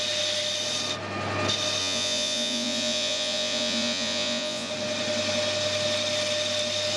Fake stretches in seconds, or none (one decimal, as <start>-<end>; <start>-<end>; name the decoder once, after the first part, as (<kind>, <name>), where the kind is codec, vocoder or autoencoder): 1.8-4.7 (vocoder, Vocos)